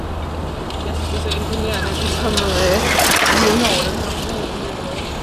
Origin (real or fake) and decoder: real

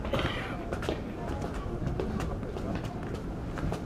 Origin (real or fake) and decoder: real